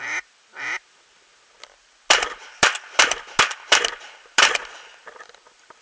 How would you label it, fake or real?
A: real